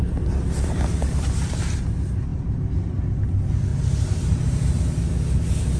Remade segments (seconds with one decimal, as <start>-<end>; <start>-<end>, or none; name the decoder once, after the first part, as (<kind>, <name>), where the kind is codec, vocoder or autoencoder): 3.7-4.7 (vocoder, BigVGAN v2)